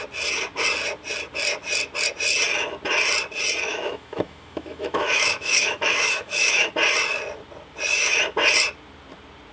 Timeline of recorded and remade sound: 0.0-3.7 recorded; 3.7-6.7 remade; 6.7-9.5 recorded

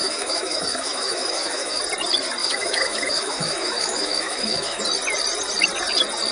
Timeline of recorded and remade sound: 0.0-1.8 remade; 1.8-2.4 recorded; 2.4-4.8 remade; 4.8-6.3 recorded

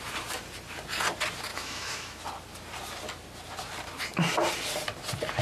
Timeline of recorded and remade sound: 0.0-1.5 recorded; 1.5-2.2 remade; 2.2-5.4 recorded

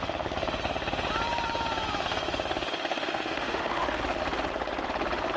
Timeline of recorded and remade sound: 0.0-2.9 recorded; 2.9-4.0 remade; 4.0-5.4 recorded